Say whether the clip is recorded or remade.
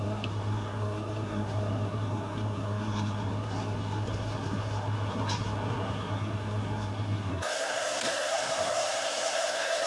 remade